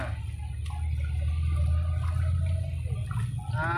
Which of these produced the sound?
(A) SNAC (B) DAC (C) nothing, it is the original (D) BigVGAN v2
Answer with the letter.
C